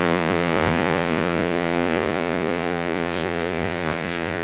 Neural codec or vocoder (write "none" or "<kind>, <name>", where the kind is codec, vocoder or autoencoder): vocoder, Vocos